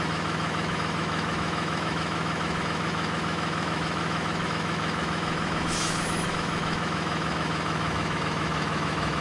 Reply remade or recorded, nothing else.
remade